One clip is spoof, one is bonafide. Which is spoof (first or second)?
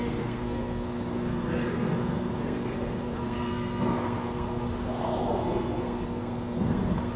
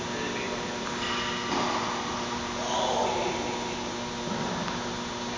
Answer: first